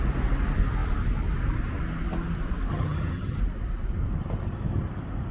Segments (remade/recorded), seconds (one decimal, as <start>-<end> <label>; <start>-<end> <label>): 0.0-2.7 recorded; 2.7-3.4 remade; 3.4-5.3 recorded